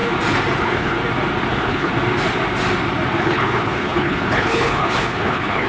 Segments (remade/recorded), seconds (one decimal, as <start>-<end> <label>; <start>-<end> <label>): 0.0-0.6 recorded; 0.6-1.0 remade; 1.0-1.5 recorded; 1.5-1.9 remade; 1.9-3.2 recorded; 3.2-5.7 remade